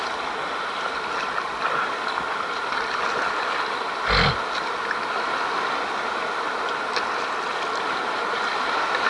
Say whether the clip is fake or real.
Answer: real